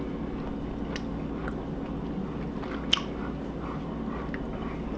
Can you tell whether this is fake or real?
real